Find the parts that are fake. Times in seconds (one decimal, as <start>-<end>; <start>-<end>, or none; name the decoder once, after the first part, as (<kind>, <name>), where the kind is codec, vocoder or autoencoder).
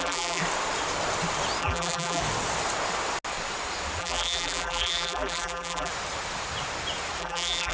0.0-0.4 (vocoder, BigVGAN v2); 1.6-2.2; 4.0-5.9; 7.2-7.7